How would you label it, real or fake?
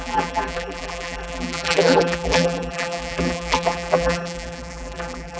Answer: fake